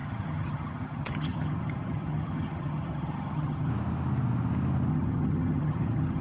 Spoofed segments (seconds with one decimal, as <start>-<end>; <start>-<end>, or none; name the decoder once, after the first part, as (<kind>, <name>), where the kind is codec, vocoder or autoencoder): 0.0-3.7 (vocoder, HiFi-GAN); 4.9-6.2